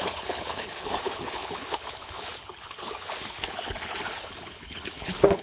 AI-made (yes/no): yes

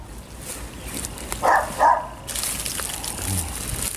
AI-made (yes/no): no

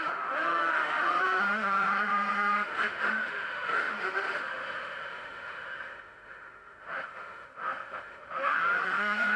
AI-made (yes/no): yes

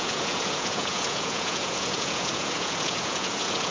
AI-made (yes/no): yes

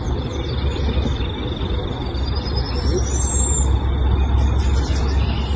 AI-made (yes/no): no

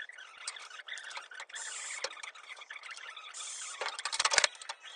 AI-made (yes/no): yes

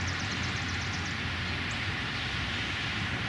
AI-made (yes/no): no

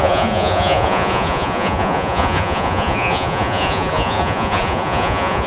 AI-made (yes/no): yes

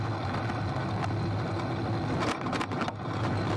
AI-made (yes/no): no